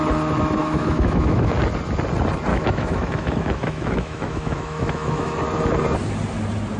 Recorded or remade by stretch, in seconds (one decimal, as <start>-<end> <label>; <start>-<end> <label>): 0.0-0.6 recorded; 0.6-1.5 remade; 1.5-2.5 recorded; 2.5-5.4 remade; 5.4-6.8 recorded